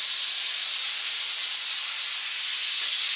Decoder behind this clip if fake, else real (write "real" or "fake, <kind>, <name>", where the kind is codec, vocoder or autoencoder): real